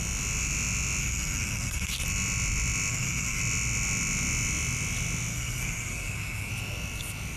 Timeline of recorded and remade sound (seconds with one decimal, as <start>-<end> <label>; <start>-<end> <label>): 0.0-1.0 recorded; 1.0-1.9 remade; 1.9-2.9 recorded; 2.9-3.4 remade; 3.4-5.3 recorded; 5.3-6.5 remade; 6.5-7.4 recorded